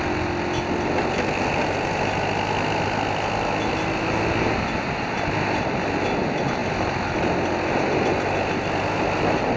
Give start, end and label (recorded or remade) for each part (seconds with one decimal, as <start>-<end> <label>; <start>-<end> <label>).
0.0-9.6 recorded

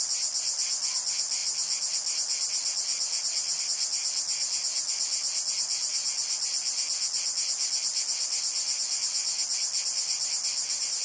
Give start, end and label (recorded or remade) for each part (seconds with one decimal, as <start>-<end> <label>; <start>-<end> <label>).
0.0-11.0 recorded

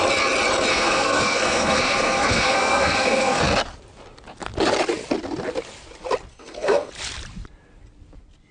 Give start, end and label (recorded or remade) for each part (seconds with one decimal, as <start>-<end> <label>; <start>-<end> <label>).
0.0-0.7 recorded; 0.7-3.4 remade; 3.4-6.3 recorded; 6.3-6.9 remade; 6.9-8.5 recorded

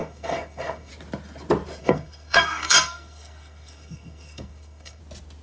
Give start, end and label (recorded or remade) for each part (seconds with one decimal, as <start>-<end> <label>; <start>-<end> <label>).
0.0-0.9 remade; 0.9-1.8 recorded; 1.8-5.0 remade; 5.0-5.4 recorded

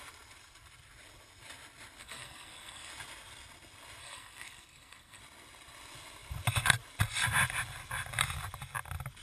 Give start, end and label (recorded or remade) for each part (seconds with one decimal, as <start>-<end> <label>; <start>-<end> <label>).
0.0-2.0 recorded; 2.0-2.9 remade; 2.9-4.0 recorded; 4.0-5.2 remade; 5.2-9.2 recorded

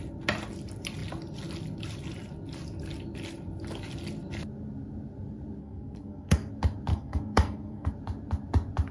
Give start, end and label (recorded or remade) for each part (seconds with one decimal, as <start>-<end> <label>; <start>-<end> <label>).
0.0-5.6 recorded; 5.6-6.5 remade; 6.5-6.9 recorded; 6.9-7.9 remade; 7.9-8.9 recorded

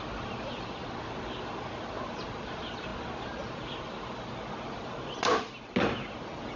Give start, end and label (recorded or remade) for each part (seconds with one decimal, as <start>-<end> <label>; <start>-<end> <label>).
0.0-6.6 recorded